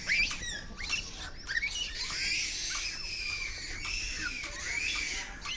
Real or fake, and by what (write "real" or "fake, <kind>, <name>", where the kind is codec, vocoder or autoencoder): real